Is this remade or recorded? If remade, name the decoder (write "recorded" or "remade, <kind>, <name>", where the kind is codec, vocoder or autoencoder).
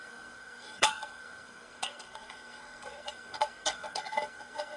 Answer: remade, codec, SNAC